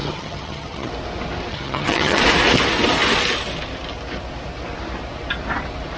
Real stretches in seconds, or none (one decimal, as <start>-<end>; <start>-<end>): 0.9-1.5; 2.2-6.0